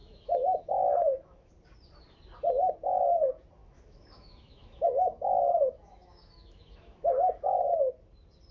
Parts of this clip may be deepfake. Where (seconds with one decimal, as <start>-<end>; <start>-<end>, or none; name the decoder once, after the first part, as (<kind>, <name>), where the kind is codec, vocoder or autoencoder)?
0.0-1.5 (autoencoder, DAC-VAE); 3.6-7.6